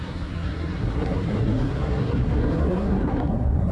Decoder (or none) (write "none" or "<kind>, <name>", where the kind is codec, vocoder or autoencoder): codec, SNAC